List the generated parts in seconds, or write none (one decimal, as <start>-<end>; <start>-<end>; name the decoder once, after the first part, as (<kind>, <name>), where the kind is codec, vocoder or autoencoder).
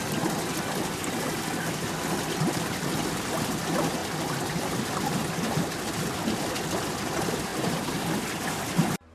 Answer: none